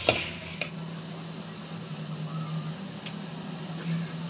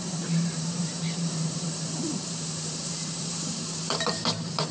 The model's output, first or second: second